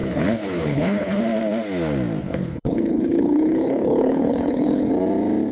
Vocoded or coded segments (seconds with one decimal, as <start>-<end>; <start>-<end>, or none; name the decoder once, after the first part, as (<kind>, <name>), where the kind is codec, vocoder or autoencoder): 0.0-1.2 (codec, HILCodec); 2.2-4.9